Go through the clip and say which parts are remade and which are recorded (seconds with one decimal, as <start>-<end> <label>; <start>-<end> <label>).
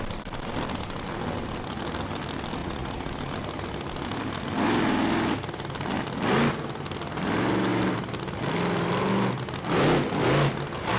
0.0-2.6 recorded; 2.6-3.1 remade; 3.1-11.0 recorded